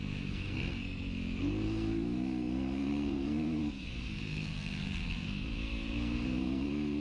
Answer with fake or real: fake